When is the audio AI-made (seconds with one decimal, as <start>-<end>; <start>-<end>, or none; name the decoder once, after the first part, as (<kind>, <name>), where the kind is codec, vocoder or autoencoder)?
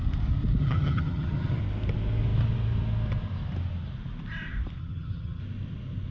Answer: 0.6-1.6 (vocoder, HiFi-GAN); 4.8-5.4